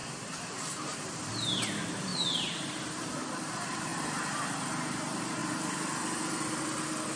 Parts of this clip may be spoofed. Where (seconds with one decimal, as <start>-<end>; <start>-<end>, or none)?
2.1-2.8; 3.9-4.4